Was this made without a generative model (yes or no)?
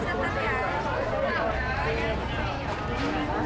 yes